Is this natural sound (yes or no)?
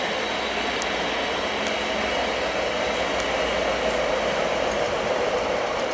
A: yes